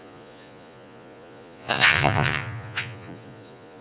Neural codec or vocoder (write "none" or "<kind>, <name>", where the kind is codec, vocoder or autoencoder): vocoder, Vocos